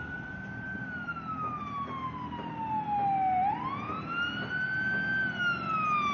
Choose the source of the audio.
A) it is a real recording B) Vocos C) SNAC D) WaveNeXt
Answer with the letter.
A